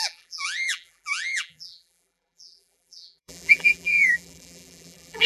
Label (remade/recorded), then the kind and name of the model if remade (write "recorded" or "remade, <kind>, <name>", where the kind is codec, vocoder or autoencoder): remade, vocoder, BigVGAN v2